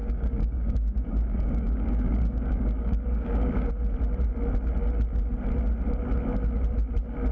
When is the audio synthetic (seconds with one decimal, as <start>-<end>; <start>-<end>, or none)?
0.0-3.7